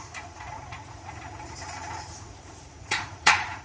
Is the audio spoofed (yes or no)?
yes